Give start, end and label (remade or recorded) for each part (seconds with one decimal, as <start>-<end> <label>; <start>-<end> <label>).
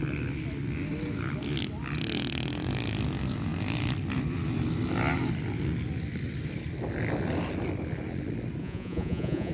0.0-8.6 recorded; 8.6-9.5 remade